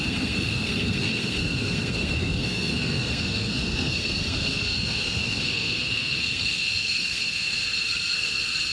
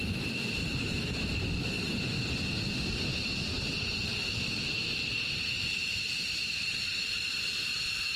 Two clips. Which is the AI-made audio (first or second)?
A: first